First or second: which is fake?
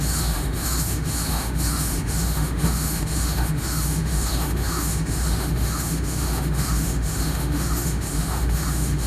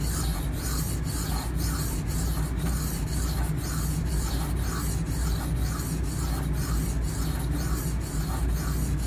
first